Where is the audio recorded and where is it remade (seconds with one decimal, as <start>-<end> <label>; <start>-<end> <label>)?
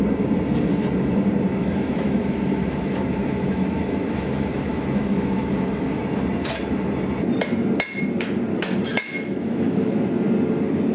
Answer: 0.0-1.6 recorded; 1.6-6.0 remade; 6.0-8.5 recorded; 8.5-10.0 remade; 10.0-10.9 recorded